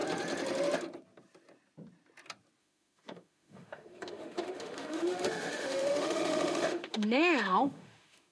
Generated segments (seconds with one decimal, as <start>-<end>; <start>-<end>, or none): 2.6-8.3